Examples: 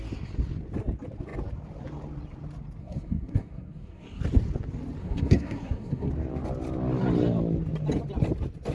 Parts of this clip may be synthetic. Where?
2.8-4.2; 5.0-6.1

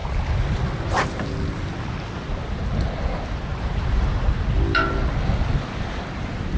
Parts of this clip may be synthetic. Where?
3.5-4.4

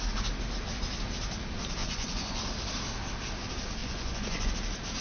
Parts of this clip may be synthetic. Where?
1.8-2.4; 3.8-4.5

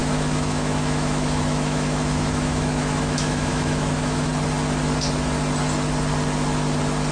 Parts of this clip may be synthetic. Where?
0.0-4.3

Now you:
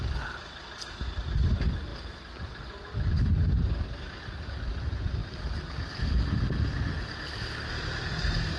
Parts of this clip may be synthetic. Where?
5.2-6.0

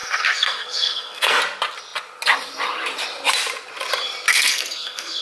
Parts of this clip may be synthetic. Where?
0.0-1.4; 4.3-5.2

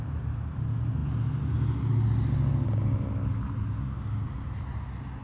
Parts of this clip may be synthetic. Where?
none

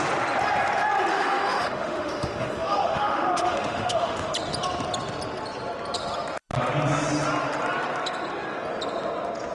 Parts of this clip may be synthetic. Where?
1.1-4.3